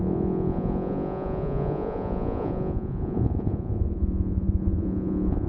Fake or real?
fake